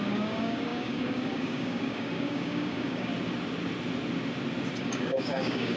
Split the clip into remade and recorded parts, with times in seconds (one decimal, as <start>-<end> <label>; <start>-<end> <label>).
0.0-3.1 remade; 3.1-4.8 recorded; 4.8-5.8 remade